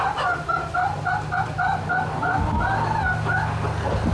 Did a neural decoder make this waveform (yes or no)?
no